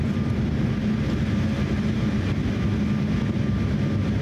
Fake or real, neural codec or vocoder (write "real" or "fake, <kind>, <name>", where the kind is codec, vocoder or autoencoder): fake, vocoder, BigVGAN v2